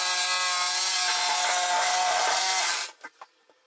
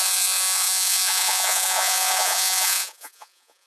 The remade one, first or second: second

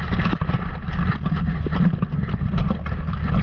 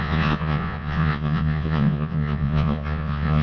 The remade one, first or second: second